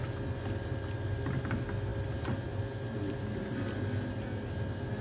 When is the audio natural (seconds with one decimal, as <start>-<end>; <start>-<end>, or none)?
0.0-5.0